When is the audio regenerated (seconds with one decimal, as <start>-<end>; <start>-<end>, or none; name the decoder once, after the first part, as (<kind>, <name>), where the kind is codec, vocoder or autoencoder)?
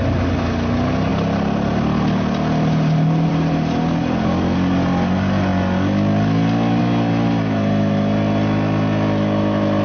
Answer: none